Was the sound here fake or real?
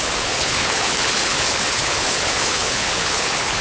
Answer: fake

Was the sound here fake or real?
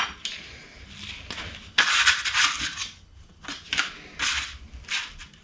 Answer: real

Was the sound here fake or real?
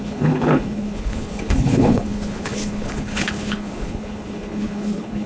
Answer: fake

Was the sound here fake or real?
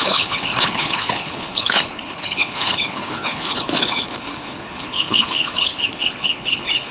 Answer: fake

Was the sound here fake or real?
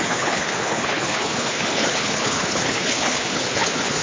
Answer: fake